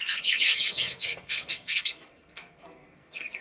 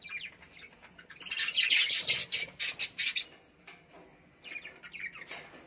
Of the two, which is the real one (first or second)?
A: second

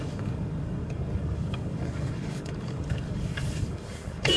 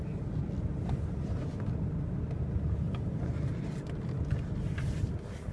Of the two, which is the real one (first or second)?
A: second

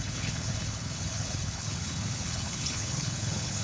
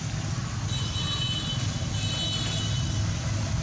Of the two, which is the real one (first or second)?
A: second